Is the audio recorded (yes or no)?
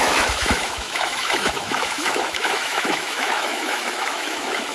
no